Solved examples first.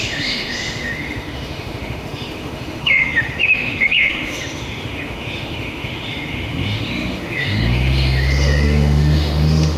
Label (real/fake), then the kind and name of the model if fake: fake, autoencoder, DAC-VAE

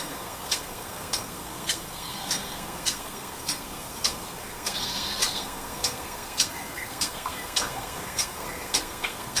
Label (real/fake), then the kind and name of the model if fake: fake, codec, SNAC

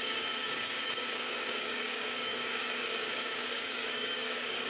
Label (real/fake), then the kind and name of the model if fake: fake, codec, DAC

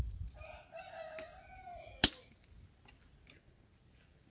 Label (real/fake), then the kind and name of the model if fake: real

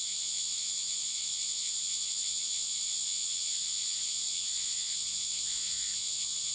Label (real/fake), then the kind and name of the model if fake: fake, vocoder, Vocos